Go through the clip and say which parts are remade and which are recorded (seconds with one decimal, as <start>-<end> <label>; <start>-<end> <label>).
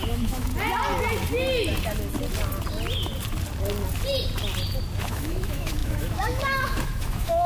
0.0-0.5 remade; 0.5-5.0 recorded; 5.0-7.5 remade